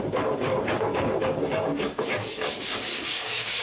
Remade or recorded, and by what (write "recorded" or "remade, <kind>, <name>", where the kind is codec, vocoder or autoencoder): remade, codec, DAC